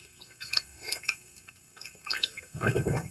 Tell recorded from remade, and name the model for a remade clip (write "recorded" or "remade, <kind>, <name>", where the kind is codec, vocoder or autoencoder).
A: remade, codec, SNAC